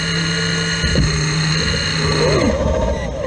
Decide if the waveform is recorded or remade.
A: recorded